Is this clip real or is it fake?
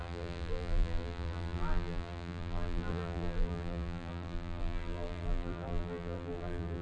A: fake